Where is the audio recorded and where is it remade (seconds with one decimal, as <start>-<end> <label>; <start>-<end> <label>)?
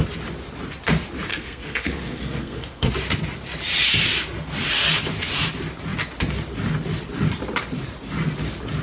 0.0-1.3 recorded; 1.3-2.9 remade; 2.9-8.8 recorded